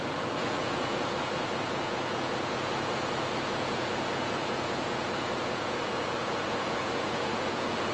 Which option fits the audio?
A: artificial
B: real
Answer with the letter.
A